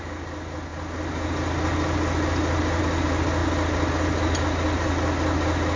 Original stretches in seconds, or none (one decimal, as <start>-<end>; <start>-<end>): 0.0-5.8